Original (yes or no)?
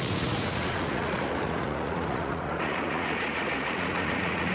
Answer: no